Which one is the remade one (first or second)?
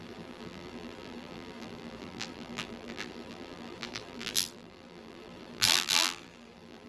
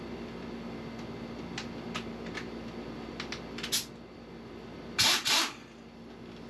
first